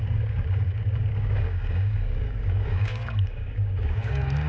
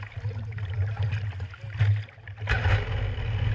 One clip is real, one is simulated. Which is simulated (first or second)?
first